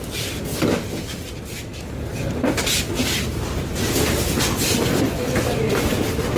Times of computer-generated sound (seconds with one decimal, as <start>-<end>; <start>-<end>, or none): none